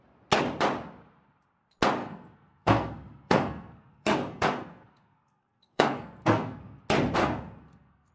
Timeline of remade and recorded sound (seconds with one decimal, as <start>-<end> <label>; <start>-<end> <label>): 0.0-2.0 recorded; 2.0-6.8 remade; 6.8-7.2 recorded; 7.2-8.1 remade